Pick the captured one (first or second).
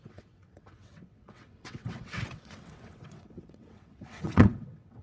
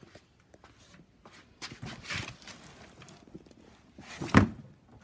second